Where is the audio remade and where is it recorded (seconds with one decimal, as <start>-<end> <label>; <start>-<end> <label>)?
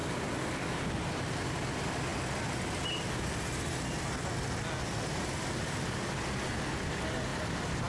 0.0-7.9 recorded